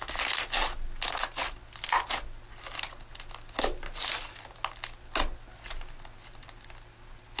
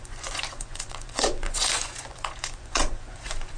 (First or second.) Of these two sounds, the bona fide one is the first